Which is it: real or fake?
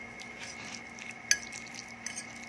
real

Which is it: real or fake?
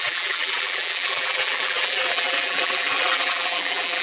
fake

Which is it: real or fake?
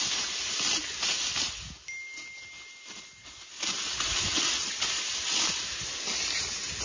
real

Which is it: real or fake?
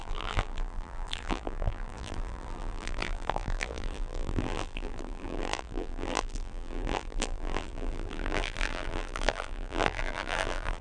fake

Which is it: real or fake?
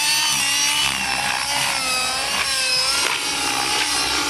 real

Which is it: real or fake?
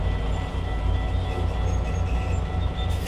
real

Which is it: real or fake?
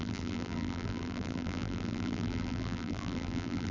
fake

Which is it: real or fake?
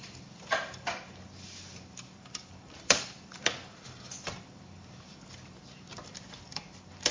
fake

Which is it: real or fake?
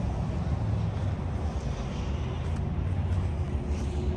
real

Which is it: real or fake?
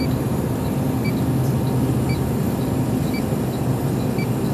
real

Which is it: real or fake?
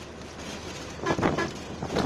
real